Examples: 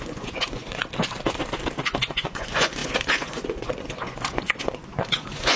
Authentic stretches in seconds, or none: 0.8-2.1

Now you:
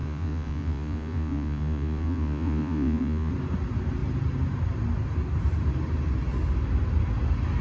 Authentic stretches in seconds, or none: 3.3-7.6

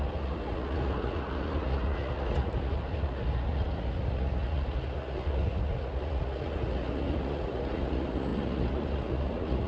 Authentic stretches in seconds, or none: none

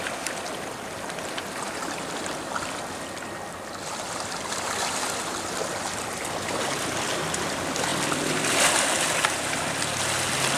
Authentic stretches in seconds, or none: 0.0-10.6

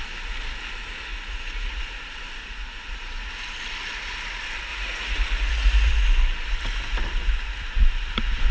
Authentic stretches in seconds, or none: 0.0-1.1; 1.8-2.4; 3.3-4.7; 5.9-8.5

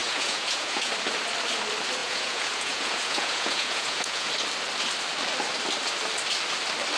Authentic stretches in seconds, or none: 0.9-2.0; 4.3-7.0